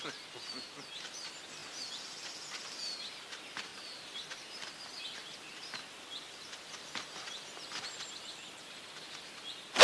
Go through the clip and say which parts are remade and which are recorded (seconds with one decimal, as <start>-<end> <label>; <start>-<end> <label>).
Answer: 0.0-9.8 recorded